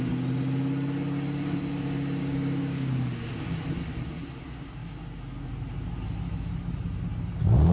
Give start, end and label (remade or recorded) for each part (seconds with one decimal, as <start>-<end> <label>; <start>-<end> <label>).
0.0-2.2 recorded; 2.2-3.4 remade; 3.4-7.7 recorded